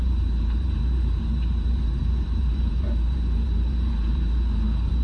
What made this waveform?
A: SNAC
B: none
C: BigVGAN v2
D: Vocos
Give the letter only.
C